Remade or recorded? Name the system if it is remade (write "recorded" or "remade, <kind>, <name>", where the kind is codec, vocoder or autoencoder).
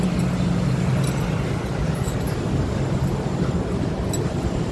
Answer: recorded